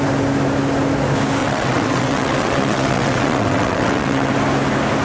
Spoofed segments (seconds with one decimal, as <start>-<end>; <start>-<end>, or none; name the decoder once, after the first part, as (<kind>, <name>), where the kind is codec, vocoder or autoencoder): 1.4-4.3 (vocoder, WaveNeXt)